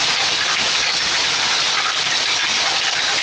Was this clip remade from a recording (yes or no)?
no